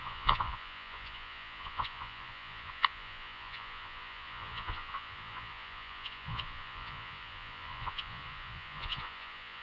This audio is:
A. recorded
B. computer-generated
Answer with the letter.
B